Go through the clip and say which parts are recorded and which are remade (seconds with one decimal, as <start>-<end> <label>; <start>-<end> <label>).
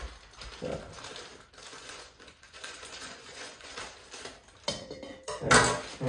0.0-1.7 recorded; 1.7-3.8 remade; 3.8-6.1 recorded